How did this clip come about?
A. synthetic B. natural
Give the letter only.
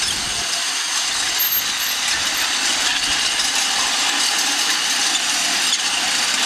B